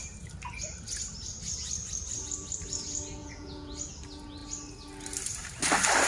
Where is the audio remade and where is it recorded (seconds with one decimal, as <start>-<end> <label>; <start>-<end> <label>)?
0.0-3.2 recorded; 3.2-3.7 remade; 3.7-6.1 recorded